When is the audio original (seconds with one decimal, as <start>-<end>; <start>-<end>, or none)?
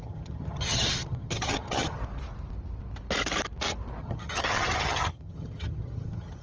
2.0-4.0